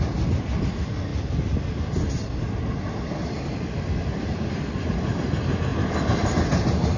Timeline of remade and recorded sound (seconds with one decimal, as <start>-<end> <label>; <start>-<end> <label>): 0.0-7.0 recorded